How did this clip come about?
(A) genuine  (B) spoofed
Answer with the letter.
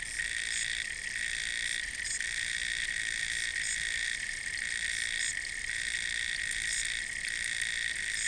A